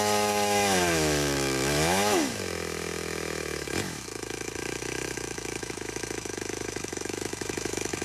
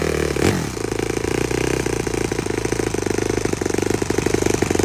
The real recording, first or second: second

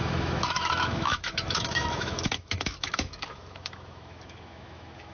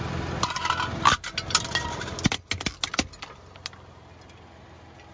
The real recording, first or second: second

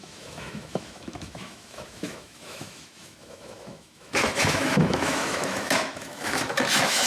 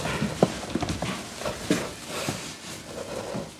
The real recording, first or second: second